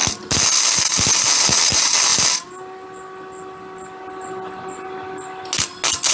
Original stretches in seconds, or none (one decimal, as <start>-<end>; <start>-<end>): 0.0-6.1